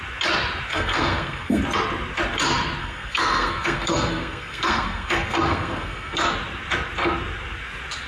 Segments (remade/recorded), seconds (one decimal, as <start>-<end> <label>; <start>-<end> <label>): 0.0-0.7 recorded; 0.7-1.6 remade; 1.6-2.8 recorded; 2.8-6.2 remade; 6.2-8.1 recorded

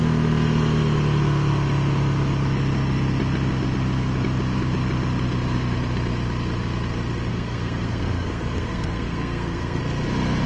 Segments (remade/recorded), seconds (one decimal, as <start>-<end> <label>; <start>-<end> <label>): 0.0-7.3 recorded; 7.3-9.8 remade; 9.8-10.5 recorded

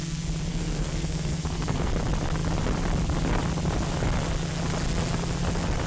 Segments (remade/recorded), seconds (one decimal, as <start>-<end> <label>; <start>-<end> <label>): 0.0-0.5 recorded; 0.5-1.9 remade; 1.9-5.9 recorded

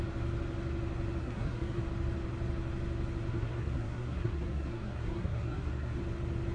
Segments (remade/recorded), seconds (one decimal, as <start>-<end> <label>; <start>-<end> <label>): 0.0-1.2 recorded; 1.2-1.8 remade; 1.8-3.3 recorded; 3.3-6.0 remade; 6.0-6.5 recorded

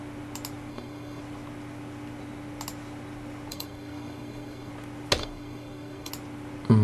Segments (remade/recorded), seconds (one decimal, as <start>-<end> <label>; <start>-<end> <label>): 0.0-0.7 recorded; 0.7-1.2 remade; 1.2-3.5 recorded; 3.5-4.7 remade; 4.7-5.2 recorded; 5.2-6.1 remade; 6.1-6.8 recorded

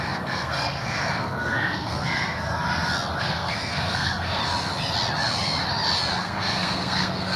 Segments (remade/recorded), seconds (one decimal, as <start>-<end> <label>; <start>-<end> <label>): 0.0-2.5 remade; 2.5-3.2 recorded; 3.2-4.4 remade; 4.4-6.2 recorded; 6.2-7.4 remade

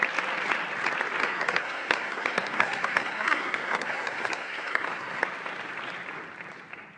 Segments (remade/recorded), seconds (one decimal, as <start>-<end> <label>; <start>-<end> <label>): 0.0-1.2 recorded; 1.2-5.2 remade; 5.2-7.0 recorded